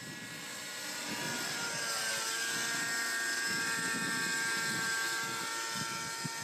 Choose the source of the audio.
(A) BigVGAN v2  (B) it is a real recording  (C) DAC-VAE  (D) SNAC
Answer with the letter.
B